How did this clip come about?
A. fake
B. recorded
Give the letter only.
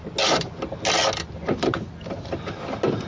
B